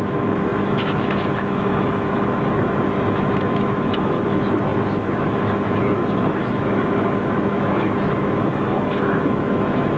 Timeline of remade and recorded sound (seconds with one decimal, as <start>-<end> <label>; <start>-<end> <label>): 0.0-10.0 remade

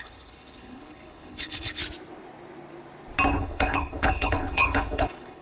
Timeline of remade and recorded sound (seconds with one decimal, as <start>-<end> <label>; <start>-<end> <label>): 0.0-1.8 remade; 1.8-3.4 recorded; 3.4-5.4 remade

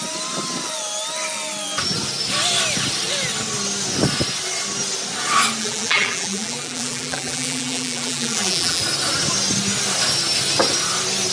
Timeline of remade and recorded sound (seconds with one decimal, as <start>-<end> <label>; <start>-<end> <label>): 0.0-5.6 recorded; 5.6-8.8 remade; 8.8-11.3 recorded